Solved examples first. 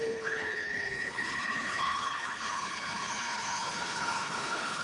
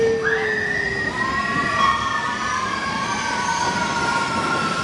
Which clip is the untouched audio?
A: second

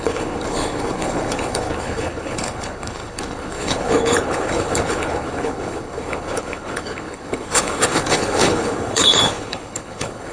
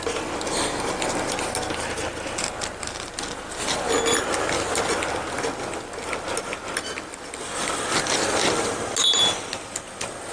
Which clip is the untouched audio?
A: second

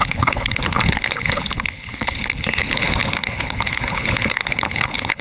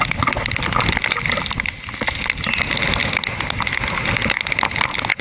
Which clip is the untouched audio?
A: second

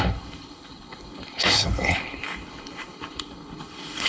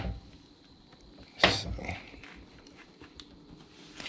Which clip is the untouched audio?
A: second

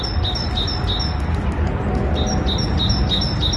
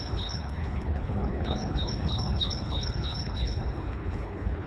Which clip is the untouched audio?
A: first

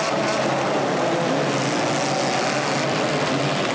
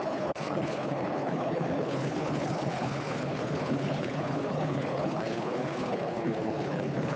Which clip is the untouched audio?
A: first